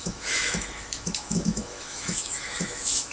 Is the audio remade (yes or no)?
yes